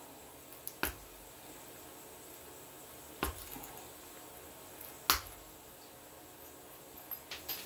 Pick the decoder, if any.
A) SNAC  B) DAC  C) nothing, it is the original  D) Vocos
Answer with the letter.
C